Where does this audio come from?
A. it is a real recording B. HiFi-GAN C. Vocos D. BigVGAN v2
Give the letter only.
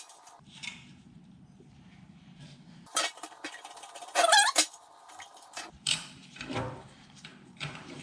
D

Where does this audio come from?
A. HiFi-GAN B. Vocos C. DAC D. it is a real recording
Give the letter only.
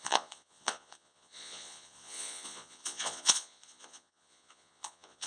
B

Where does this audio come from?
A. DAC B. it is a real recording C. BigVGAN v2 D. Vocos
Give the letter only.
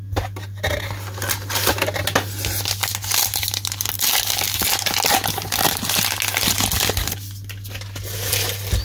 B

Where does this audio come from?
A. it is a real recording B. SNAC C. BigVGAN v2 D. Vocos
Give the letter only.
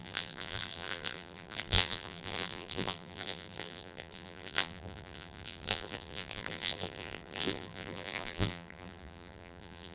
C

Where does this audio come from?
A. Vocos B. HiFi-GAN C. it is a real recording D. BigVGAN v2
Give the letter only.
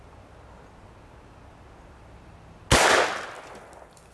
C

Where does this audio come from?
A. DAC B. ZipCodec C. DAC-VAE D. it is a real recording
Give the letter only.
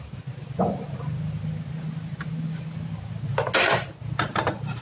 D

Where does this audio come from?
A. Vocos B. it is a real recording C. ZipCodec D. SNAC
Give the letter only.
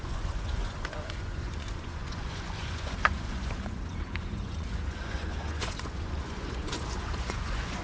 A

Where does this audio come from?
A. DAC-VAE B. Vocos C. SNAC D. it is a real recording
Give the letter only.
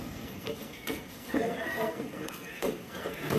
C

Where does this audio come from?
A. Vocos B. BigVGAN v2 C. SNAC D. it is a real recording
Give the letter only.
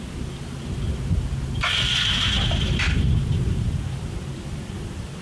D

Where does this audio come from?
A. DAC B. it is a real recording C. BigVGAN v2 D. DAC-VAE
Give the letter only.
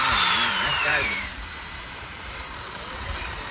C